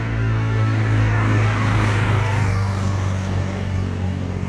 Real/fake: fake